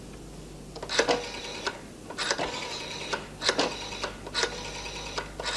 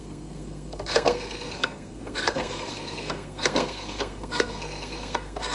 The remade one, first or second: second